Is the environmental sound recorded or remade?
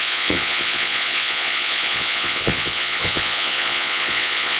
remade